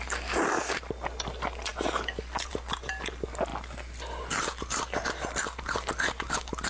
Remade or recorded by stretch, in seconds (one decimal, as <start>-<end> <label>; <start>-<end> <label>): 0.0-6.7 recorded